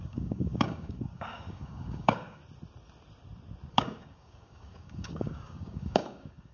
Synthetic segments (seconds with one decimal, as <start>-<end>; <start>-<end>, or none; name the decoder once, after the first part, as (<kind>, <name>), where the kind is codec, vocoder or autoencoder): 0.0-2.4 (codec, DAC); 3.7-6.5